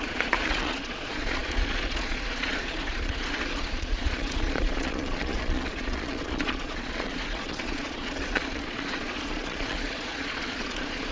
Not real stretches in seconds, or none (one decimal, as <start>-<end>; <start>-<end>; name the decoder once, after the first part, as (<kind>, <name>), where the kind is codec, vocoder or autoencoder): 0.0-11.1 (vocoder, Vocos)